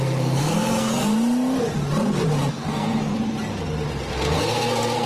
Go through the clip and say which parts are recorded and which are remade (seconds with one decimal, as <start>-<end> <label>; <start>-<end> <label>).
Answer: 0.0-0.9 remade; 0.9-2.5 recorded; 2.5-3.1 remade; 3.1-4.1 recorded; 4.1-5.1 remade